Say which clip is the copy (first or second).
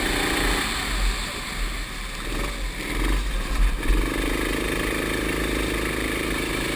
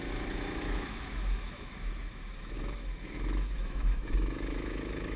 second